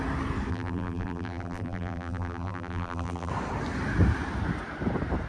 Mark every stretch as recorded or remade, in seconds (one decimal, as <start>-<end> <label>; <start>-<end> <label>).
0.0-0.5 recorded; 0.5-3.3 remade; 3.3-5.3 recorded